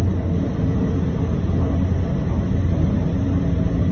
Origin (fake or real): real